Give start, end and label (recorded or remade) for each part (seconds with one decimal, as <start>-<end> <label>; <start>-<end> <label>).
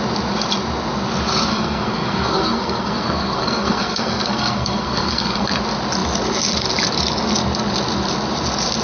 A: 0.0-1.5 recorded; 1.5-5.6 remade; 5.6-8.8 recorded